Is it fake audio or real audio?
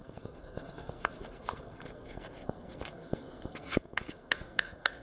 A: fake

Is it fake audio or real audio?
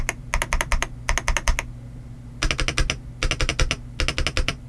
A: real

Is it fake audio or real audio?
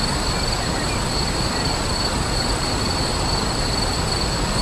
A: real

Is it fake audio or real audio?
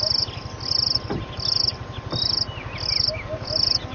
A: real